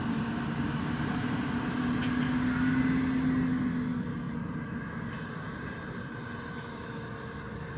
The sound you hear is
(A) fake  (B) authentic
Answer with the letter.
B